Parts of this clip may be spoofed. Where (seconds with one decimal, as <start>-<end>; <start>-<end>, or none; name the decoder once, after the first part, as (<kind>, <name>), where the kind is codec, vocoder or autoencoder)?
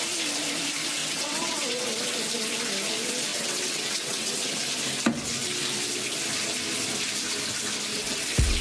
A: 1.0-1.8 (vocoder, WaveNeXt); 3.3-4.5; 7.9-8.6